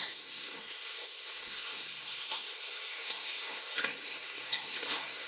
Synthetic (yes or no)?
yes